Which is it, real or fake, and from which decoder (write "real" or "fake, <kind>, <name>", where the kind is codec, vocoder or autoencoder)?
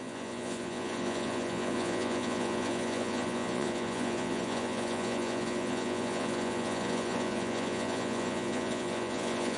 fake, vocoder, Vocos